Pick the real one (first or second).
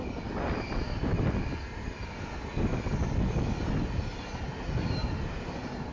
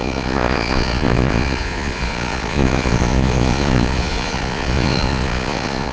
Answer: first